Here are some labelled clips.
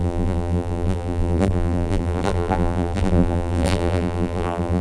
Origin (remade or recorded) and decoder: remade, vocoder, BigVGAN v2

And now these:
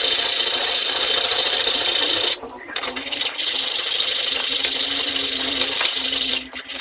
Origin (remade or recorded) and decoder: remade, vocoder, BigVGAN v2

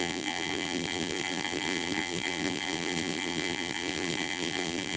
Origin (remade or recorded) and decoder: remade, vocoder, BigVGAN v2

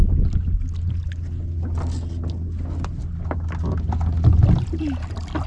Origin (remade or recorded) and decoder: recorded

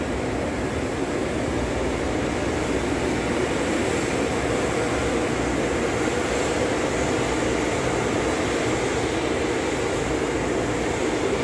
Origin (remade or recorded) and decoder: recorded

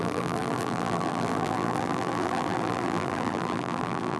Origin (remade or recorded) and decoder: remade, vocoder, BigVGAN v2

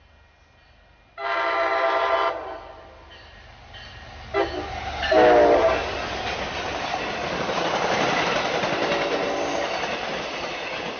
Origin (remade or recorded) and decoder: recorded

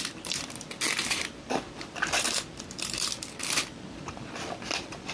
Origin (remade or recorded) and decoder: remade, vocoder, BigVGAN v2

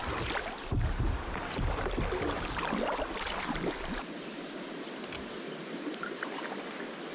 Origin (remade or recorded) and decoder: recorded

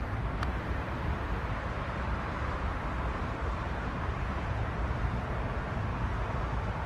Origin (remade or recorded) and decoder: remade, vocoder, BigVGAN v2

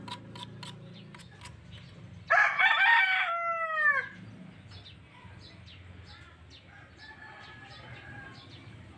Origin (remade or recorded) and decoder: recorded